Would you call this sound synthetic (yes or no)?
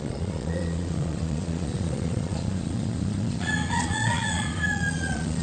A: yes